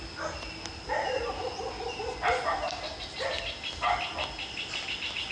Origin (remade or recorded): recorded